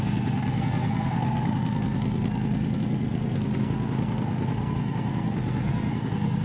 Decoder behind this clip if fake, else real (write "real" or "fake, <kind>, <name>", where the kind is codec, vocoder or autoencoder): fake, codec, SNAC